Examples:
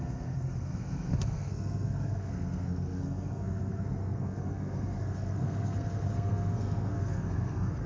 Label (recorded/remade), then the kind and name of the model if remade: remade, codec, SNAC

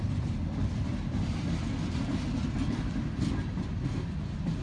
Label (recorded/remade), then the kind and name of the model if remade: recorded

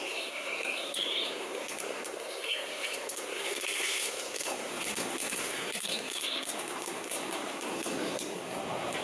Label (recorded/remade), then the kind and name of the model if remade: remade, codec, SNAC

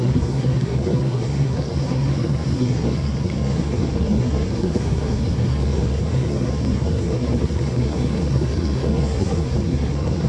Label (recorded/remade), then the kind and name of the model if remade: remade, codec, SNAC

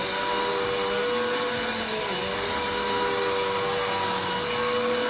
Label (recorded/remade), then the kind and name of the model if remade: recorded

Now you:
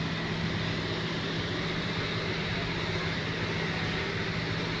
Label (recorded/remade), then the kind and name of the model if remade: recorded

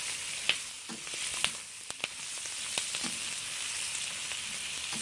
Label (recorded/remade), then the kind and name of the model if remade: recorded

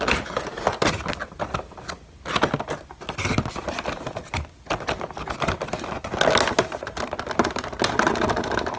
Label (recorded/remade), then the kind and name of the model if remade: recorded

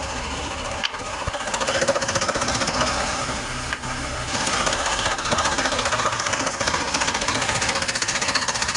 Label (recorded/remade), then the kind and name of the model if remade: remade, codec, SNAC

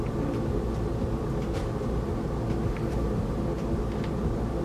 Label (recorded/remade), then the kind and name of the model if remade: recorded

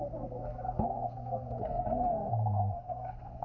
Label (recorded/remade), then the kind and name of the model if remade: remade, codec, SNAC